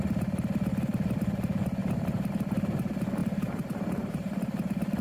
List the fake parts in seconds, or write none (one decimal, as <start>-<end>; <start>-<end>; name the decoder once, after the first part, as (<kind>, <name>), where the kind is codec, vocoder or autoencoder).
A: 1.8-2.3 (vocoder, BigVGAN v2); 3.2-5.0